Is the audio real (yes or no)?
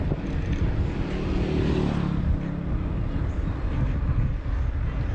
yes